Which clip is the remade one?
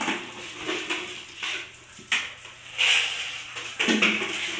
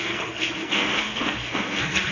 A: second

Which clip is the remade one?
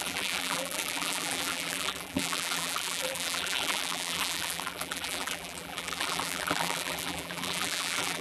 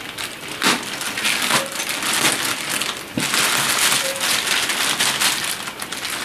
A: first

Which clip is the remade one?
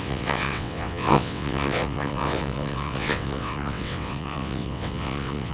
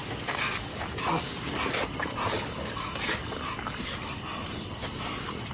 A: first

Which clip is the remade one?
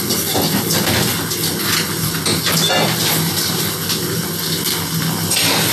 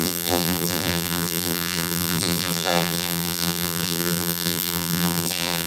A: second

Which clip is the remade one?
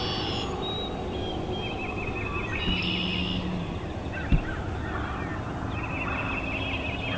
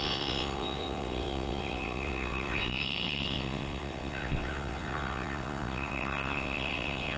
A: second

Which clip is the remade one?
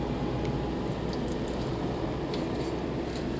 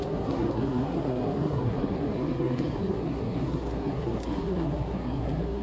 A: second